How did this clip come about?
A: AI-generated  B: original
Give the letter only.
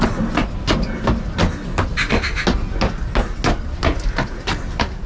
B